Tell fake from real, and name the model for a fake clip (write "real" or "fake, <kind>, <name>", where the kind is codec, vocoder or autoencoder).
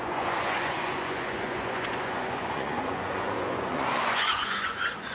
fake, vocoder, Vocos